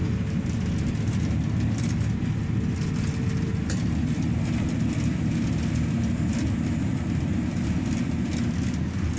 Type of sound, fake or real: real